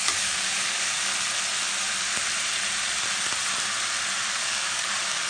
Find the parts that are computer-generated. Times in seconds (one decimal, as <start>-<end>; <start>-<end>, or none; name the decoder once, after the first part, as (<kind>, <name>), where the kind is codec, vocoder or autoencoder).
0.0-1.1 (codec, DAC); 4.3-5.3